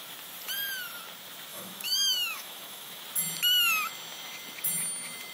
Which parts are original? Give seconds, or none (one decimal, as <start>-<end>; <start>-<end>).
0.0-1.5; 3.0-5.3